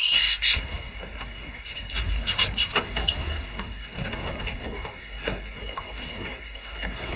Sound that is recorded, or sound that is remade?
remade